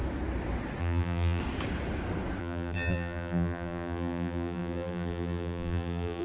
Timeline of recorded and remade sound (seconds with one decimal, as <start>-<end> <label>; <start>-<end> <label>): 0.0-0.8 recorded; 0.8-1.4 remade; 1.4-2.4 recorded; 2.4-6.2 remade